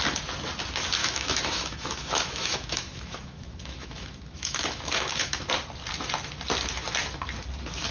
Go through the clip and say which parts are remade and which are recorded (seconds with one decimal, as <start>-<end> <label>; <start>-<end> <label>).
0.0-1.0 recorded; 1.0-5.5 remade; 5.5-7.9 recorded